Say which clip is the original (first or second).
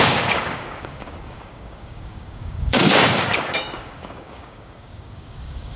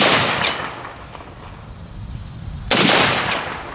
second